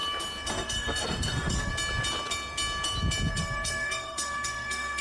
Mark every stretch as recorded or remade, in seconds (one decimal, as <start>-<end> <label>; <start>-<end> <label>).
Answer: 0.0-0.5 recorded; 0.5-1.7 remade; 1.7-3.3 recorded; 3.3-5.0 remade